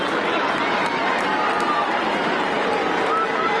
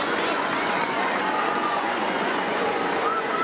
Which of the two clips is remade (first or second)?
second